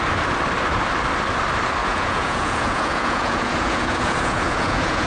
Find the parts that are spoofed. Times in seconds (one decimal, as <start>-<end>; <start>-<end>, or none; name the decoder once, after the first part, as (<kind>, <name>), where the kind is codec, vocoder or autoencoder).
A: 1.8-5.1 (vocoder, Vocos)